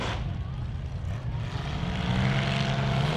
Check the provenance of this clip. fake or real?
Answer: real